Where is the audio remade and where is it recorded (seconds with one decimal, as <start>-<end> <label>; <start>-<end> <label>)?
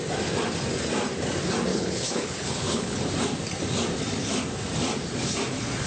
0.0-1.7 recorded; 1.7-3.0 remade; 3.0-5.9 recorded